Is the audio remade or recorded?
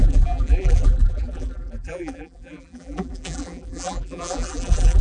remade